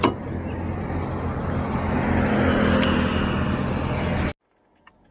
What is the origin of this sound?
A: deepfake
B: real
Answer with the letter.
B